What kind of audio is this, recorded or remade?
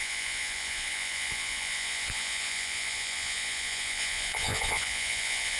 remade